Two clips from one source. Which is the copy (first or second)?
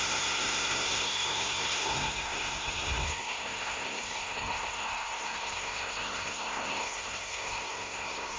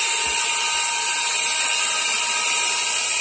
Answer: first